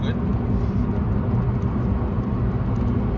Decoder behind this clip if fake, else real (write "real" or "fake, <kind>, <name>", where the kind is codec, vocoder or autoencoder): real